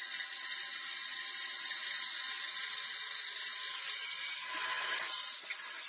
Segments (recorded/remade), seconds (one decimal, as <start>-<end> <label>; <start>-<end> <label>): 0.0-0.5 remade; 0.5-5.9 recorded